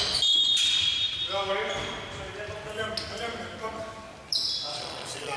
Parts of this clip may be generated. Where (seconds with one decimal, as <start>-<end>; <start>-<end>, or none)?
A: 4.7-5.4